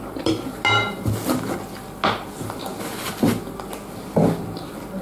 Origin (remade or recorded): recorded